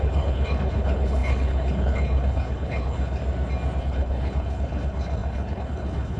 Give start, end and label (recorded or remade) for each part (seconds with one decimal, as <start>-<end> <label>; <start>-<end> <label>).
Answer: 0.0-3.2 remade; 3.2-3.8 recorded; 3.8-6.2 remade